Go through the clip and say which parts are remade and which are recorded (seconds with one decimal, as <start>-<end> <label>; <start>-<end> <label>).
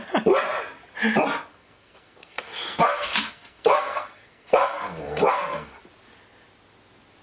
0.0-1.5 recorded; 1.5-5.8 remade; 5.8-7.2 recorded